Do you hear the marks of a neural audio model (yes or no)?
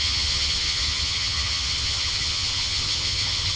yes